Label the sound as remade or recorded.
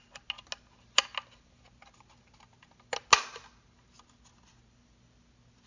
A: recorded